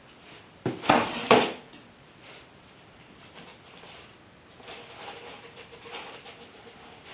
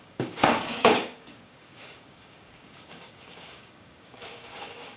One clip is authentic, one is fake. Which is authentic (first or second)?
first